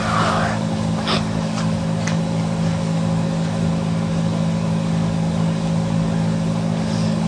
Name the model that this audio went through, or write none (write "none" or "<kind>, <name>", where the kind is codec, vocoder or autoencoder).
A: codec, DAC